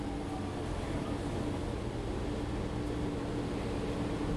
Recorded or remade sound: recorded